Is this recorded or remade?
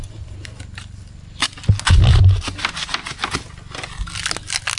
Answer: recorded